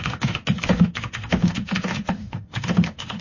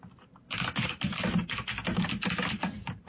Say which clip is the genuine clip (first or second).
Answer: second